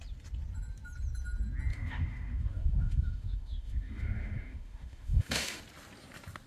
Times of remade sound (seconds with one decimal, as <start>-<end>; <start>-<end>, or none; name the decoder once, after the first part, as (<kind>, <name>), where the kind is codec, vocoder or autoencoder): 1.7-5.6 (autoencoder, DAC-VAE)